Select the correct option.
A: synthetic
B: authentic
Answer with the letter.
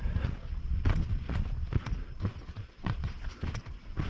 A